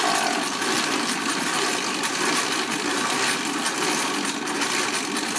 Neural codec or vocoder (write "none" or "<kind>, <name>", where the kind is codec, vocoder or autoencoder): none